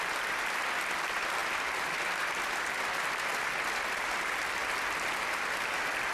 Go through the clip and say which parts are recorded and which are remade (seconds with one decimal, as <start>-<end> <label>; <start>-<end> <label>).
0.0-6.1 recorded